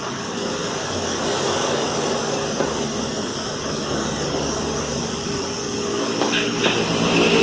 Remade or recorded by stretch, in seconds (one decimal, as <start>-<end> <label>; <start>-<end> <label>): 0.0-6.6 remade; 6.6-7.4 recorded